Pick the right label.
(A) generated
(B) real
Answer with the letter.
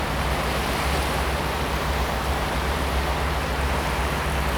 A